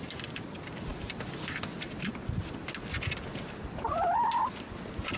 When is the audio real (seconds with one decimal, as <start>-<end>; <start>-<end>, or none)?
0.0-5.2